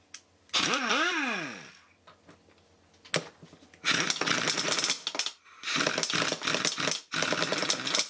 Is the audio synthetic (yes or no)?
no